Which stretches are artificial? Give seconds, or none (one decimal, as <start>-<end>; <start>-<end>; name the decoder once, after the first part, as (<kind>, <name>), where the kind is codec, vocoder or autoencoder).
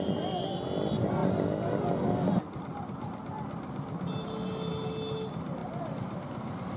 none